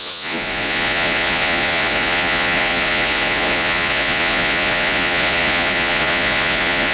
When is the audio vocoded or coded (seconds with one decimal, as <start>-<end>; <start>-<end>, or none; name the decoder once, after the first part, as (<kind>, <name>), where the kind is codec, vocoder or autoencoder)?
0.0-6.9 (vocoder, Vocos)